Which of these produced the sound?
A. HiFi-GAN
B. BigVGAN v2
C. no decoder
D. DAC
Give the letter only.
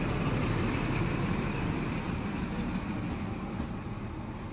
B